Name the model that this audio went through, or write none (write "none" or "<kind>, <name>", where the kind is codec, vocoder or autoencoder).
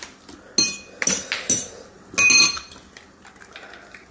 none